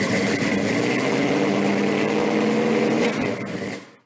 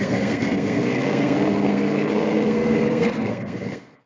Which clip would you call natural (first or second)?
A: first